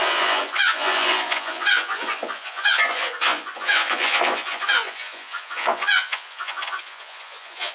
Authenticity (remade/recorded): remade